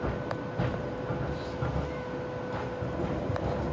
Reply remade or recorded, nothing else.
recorded